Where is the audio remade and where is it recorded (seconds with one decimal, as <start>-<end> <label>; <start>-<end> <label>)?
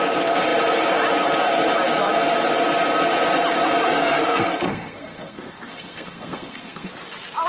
0.0-4.0 recorded; 4.0-6.9 remade; 6.9-7.5 recorded